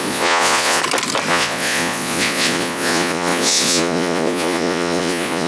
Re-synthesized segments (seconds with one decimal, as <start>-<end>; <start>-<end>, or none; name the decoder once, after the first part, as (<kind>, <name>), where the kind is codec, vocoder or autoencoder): 0.0-0.8 (vocoder, Vocos); 1.3-5.5